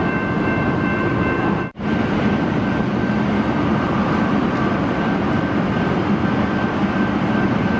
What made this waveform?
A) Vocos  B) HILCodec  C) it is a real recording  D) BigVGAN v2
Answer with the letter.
D